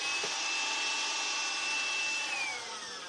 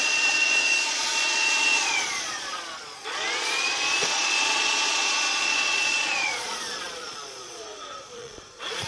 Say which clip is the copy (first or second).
second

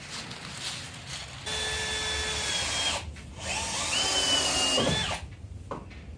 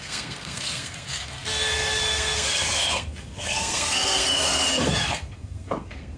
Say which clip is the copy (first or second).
second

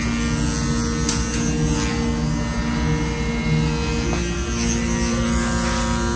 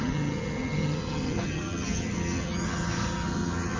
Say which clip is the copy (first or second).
second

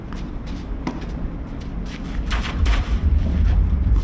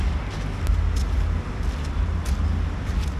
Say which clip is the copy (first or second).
first